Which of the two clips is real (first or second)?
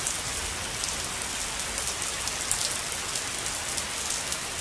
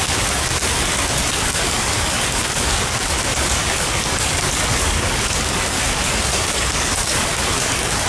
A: first